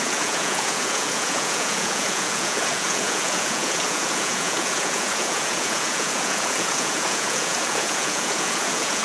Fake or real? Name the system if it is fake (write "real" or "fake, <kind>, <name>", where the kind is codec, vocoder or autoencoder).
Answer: fake, vocoder, Vocos